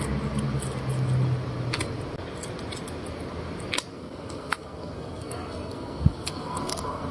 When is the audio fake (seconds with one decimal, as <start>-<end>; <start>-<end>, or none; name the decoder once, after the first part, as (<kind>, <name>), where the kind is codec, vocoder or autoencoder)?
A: 3.9-7.1 (codec, SNAC)